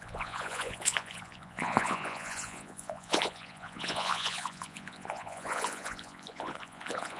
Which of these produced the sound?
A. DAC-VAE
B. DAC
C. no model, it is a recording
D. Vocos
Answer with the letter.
D